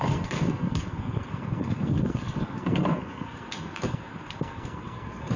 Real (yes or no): no